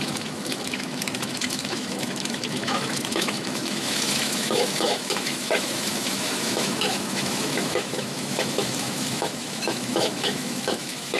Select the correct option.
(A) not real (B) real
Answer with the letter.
A